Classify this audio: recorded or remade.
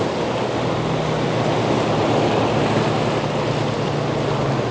recorded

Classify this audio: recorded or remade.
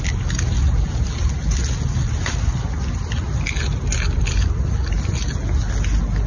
recorded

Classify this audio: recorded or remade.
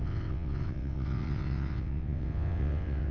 remade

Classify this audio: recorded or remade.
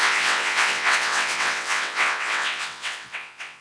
remade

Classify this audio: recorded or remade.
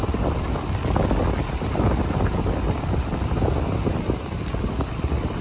recorded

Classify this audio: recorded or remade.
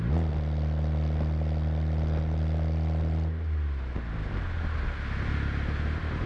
recorded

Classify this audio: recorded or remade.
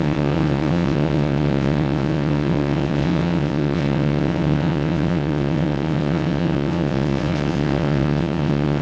remade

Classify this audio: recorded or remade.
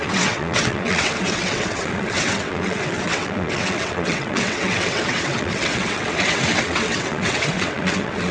remade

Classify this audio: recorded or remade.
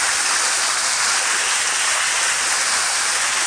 recorded